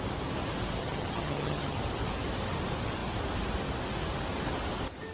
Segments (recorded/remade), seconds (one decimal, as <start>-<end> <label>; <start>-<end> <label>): 0.0-0.8 recorded; 0.8-1.8 remade; 1.8-5.1 recorded